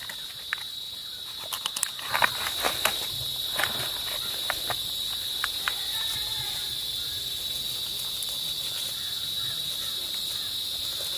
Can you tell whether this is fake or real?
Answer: real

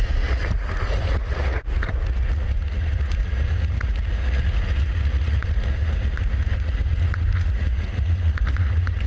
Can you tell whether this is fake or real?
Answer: fake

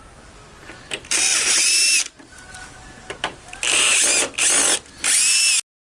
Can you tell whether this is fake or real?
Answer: real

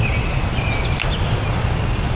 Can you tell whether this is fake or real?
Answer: real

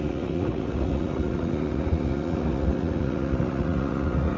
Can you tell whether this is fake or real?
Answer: fake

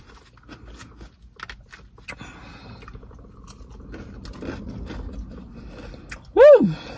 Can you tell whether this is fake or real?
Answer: real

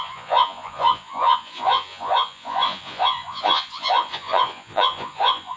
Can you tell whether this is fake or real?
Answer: fake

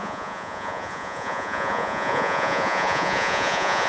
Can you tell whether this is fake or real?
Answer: fake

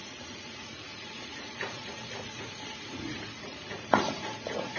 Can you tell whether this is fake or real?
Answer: fake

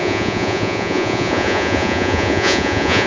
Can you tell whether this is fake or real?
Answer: fake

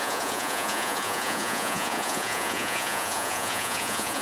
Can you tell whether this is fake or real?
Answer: fake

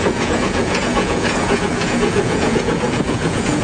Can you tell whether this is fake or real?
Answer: fake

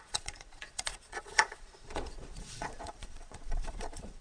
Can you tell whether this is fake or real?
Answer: fake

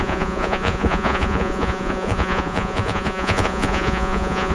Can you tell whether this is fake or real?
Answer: fake